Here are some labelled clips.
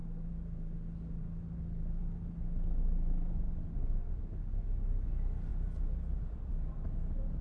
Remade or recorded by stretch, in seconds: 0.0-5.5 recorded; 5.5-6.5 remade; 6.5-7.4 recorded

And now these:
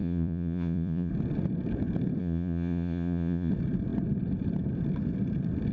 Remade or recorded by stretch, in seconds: 0.0-1.1 remade; 1.1-2.2 recorded; 2.2-3.5 remade; 3.5-5.7 recorded

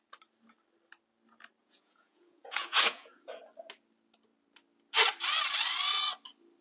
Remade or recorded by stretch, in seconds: 0.0-1.6 recorded; 1.6-3.4 remade; 3.4-6.6 recorded

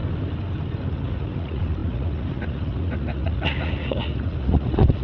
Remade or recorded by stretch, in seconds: 0.0-0.9 recorded; 0.9-5.0 remade

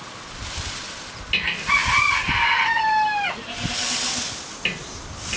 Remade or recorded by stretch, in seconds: 0.0-5.4 recorded

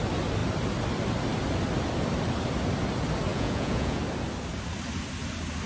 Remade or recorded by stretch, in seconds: 0.0-3.3 recorded; 3.3-4.0 remade; 4.0-5.7 recorded

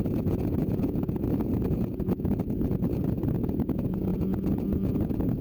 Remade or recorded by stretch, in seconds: 0.0-5.4 remade